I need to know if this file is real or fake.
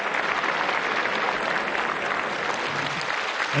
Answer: real